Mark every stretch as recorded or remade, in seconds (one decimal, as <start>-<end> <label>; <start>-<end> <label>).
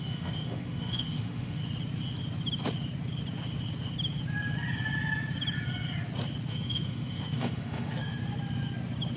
0.0-1.6 remade; 1.6-6.5 recorded; 6.5-8.2 remade; 8.2-9.2 recorded